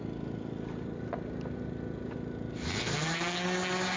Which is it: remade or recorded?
recorded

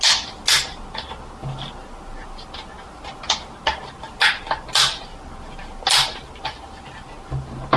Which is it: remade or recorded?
recorded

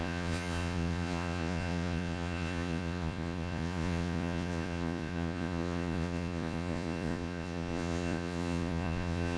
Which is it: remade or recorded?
remade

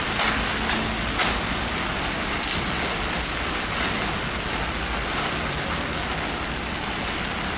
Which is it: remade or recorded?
recorded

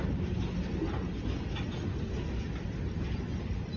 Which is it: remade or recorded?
recorded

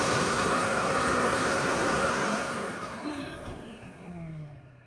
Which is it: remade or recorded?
remade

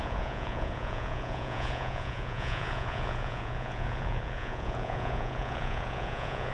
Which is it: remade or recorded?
remade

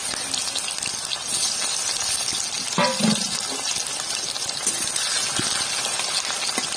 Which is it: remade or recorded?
recorded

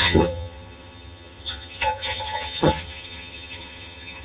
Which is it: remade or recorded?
remade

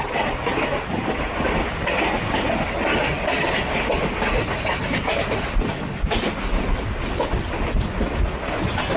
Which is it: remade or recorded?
recorded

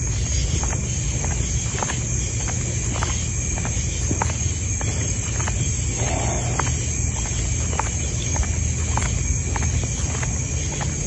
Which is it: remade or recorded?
recorded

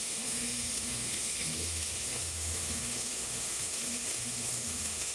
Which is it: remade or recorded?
remade